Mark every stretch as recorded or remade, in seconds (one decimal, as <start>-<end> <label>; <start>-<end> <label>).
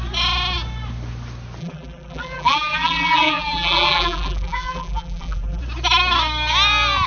0.0-1.6 recorded; 1.6-5.6 remade; 5.6-7.1 recorded